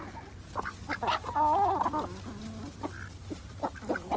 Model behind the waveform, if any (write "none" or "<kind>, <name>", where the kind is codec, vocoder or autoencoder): none